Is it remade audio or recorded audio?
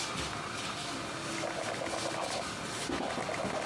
recorded